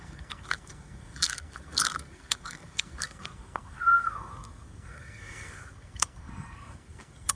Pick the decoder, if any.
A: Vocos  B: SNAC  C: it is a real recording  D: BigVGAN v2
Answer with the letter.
B